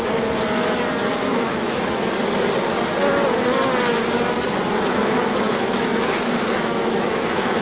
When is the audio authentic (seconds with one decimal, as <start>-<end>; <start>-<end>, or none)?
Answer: 0.0-1.1; 2.0-5.0